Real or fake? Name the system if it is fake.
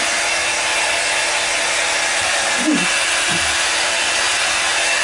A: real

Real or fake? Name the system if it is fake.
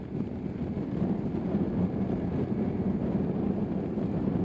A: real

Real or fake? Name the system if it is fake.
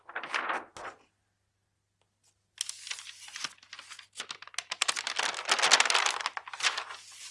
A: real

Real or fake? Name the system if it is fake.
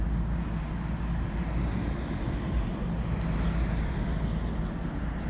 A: real